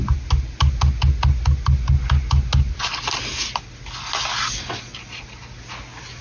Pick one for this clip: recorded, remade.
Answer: recorded